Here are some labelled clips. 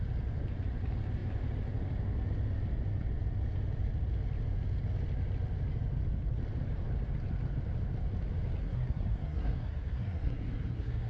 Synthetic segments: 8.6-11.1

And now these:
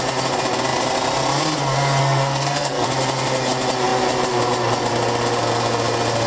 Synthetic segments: 2.0-2.9

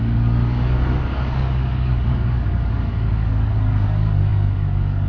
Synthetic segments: 0.0-5.1

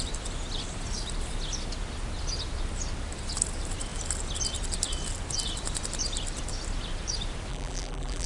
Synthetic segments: 7.5-8.3

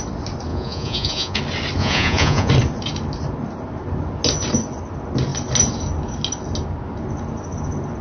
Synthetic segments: 0.5-1.4; 1.8-2.5

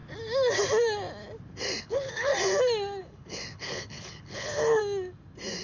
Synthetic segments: 1.8-2.3; 3.0-4.8

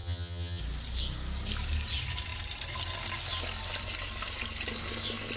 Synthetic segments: 0.0-0.6